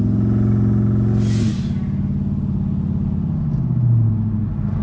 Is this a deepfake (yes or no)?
no